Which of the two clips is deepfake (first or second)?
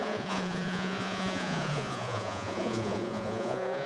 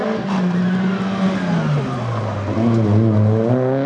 first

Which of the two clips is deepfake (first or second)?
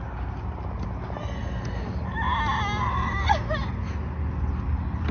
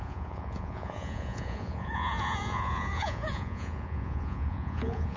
second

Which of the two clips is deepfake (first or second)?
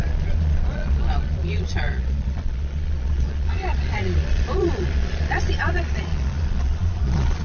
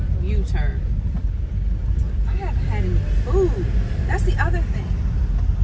first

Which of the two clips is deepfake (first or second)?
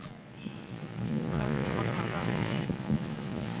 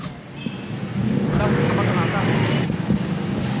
first